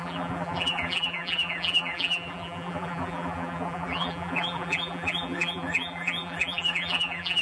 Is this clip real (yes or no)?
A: no